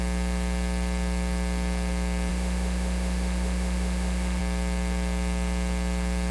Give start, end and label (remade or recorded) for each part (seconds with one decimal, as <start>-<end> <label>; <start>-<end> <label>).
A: 0.0-2.3 recorded; 2.3-4.4 remade; 4.4-6.3 recorded